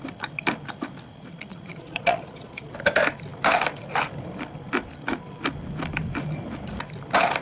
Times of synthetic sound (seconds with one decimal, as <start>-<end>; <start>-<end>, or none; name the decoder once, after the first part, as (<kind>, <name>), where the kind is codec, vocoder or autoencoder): 1.5-2.6 (vocoder, Vocos)